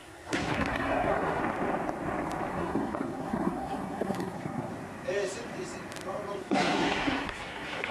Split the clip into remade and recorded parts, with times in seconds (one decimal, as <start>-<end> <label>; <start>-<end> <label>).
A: 0.0-1.4 remade; 1.4-2.5 recorded; 2.5-4.7 remade; 4.7-6.4 recorded; 6.4-7.9 remade